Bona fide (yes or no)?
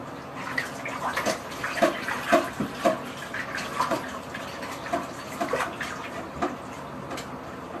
yes